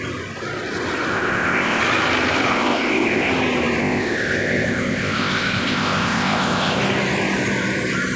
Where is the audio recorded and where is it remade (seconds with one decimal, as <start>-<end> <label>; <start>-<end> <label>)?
0.0-1.1 recorded; 1.1-1.8 remade; 1.8-2.5 recorded; 2.5-3.3 remade; 3.3-3.8 recorded; 3.8-6.8 remade; 6.8-8.2 recorded